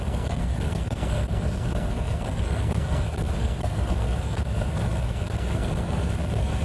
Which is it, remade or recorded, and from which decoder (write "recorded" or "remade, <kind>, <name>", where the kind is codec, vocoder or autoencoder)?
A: remade, codec, SNAC